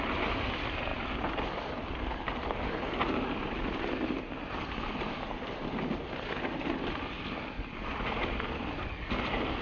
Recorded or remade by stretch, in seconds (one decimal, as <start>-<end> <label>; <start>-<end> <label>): 0.0-9.6 recorded